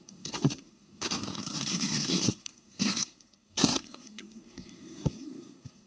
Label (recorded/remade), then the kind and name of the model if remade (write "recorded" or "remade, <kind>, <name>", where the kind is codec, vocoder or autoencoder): remade, codec, SNAC